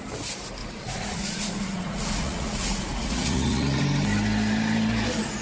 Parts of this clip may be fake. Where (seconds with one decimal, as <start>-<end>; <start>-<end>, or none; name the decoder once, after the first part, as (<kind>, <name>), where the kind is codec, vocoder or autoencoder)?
0.6-3.8 (vocoder, Vocos)